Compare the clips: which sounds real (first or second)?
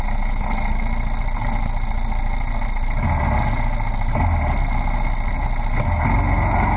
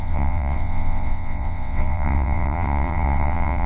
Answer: first